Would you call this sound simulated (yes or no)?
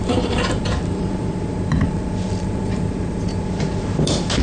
yes